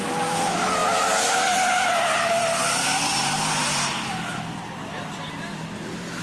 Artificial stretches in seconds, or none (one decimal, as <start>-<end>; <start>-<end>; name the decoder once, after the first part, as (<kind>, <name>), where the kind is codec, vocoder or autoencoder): 0.8-2.3 (vocoder, BigVGAN v2)